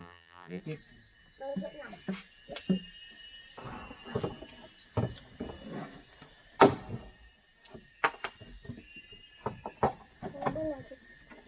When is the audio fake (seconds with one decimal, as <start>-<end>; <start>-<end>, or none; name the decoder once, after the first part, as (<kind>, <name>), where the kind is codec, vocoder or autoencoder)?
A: 0.0-0.6 (vocoder, BigVGAN v2)